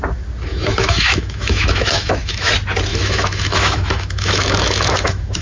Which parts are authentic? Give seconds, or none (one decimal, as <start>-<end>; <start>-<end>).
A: 0.0-0.5; 2.5-2.9

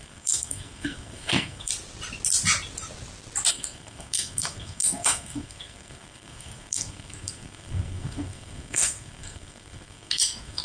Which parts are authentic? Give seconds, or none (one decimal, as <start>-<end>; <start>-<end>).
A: 1.7-3.5

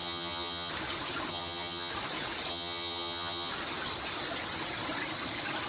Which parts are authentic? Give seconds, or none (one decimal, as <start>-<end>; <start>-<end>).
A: 0.7-1.3; 1.9-2.5; 3.5-5.7

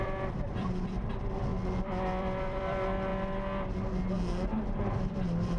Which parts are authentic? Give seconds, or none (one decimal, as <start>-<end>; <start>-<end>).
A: 1.5-2.2; 3.1-4.8

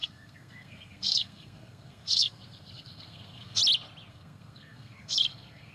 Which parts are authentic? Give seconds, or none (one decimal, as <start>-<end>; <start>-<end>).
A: 3.6-4.1

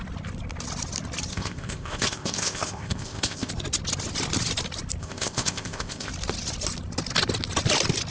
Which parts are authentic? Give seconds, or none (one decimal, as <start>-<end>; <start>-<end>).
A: 0.0-1.3; 3.5-5.0; 6.1-8.1

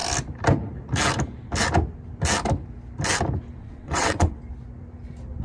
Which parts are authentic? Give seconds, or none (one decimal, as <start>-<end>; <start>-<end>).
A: 0.0-3.6; 4.4-5.4

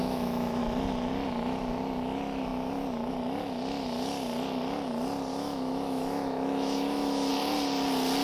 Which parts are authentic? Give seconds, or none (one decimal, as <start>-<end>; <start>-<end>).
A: 0.6-5.3; 7.3-8.2